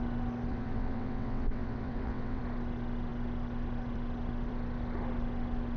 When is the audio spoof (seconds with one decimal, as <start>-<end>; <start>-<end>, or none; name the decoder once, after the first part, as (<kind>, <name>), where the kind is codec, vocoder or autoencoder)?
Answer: 0.5-2.4 (vocoder, WaveNeXt)